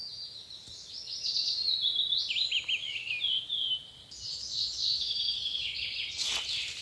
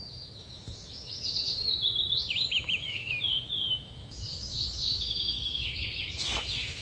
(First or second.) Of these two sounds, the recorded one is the first